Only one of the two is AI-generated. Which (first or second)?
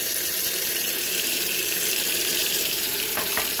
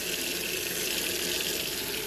first